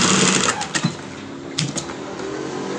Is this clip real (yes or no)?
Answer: yes